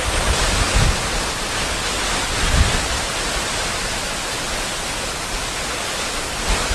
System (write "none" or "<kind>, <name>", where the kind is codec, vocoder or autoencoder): none